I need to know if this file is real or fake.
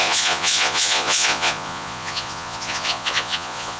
fake